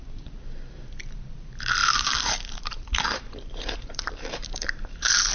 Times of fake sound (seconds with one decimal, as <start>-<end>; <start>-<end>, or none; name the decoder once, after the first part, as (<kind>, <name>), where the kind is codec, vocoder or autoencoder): 1.8-5.3 (vocoder, BigVGAN v2)